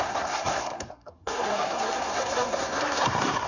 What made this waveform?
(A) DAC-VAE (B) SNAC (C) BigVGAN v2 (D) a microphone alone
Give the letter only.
B